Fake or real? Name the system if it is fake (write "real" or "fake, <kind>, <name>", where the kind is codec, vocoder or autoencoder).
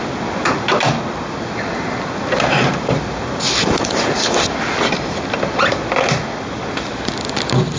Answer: real